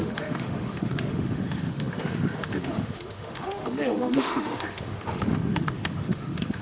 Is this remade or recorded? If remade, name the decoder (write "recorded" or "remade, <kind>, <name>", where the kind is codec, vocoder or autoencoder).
remade, autoencoder, DAC-VAE